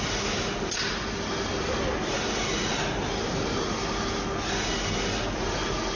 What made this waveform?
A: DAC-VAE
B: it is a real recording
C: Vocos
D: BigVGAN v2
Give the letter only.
B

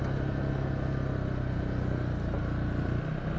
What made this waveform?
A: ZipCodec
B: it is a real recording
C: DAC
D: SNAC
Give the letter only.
B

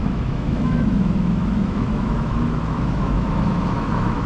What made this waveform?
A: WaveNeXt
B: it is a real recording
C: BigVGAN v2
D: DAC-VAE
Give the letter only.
D